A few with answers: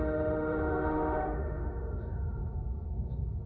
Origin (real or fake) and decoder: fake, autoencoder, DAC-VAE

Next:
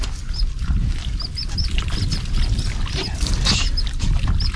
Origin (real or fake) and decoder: real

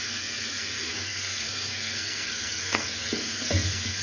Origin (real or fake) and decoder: fake, codec, SNAC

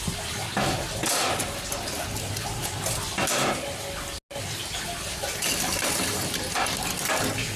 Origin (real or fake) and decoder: real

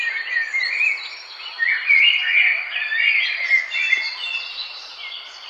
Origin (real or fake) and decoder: real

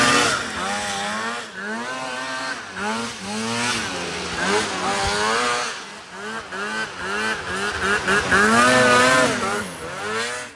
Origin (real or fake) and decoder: real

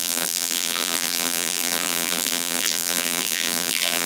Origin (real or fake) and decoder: fake, vocoder, BigVGAN v2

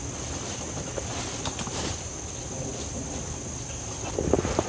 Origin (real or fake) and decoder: real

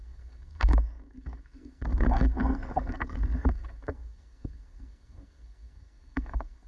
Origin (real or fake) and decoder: fake, codec, SNAC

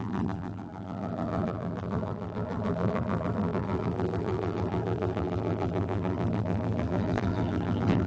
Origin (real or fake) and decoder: fake, vocoder, BigVGAN v2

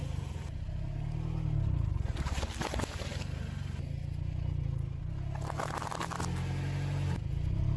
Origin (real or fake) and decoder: real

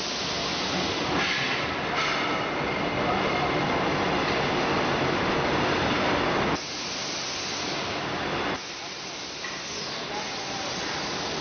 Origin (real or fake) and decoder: real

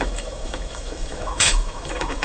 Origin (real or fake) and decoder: fake, autoencoder, DAC-VAE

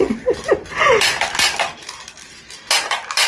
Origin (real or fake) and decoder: real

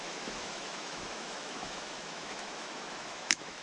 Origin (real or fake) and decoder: fake, autoencoder, DAC-VAE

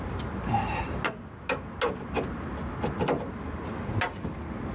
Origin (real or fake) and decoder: real